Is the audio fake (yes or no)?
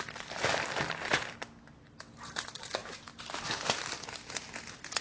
no